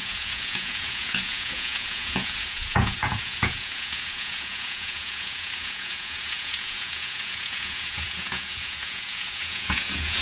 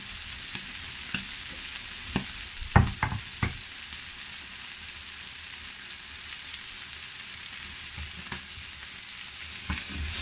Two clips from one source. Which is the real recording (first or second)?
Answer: second